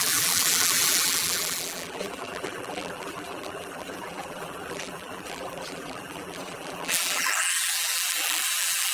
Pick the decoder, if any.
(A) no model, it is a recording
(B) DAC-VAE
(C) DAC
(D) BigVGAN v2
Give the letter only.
D